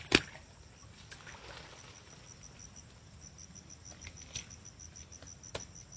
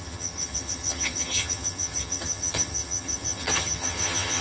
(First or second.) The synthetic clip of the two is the second